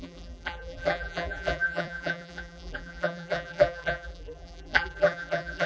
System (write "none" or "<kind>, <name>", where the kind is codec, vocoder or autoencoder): vocoder, BigVGAN v2